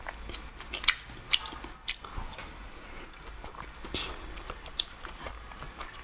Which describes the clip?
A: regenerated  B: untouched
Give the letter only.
B